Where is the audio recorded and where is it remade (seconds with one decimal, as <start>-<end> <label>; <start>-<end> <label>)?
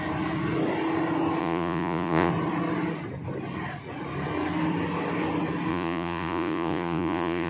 0.0-1.4 recorded; 1.4-2.3 remade; 2.3-5.7 recorded; 5.7-7.5 remade